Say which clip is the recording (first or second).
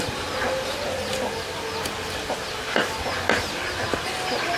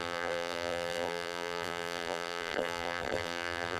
first